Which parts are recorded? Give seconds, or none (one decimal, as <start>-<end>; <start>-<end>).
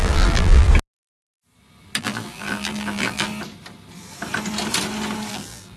0.7-2.0; 3.3-5.3